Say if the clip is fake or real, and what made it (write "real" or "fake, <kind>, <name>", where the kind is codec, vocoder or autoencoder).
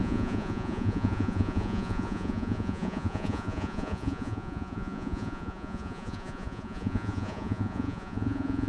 fake, vocoder, Vocos